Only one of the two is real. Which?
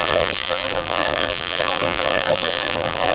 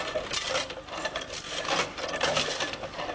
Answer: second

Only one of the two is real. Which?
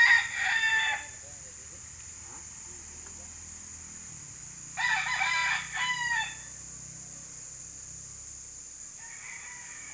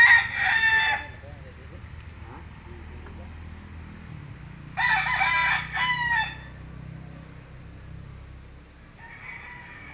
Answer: second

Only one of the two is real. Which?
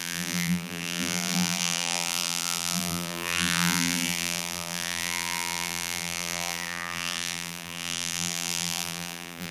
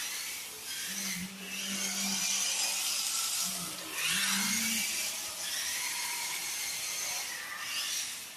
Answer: second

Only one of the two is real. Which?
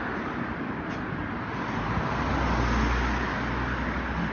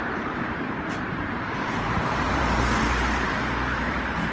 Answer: first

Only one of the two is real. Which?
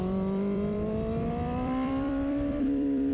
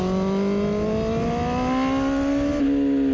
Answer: second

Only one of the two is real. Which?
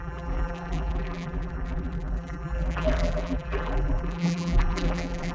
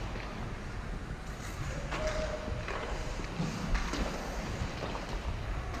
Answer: second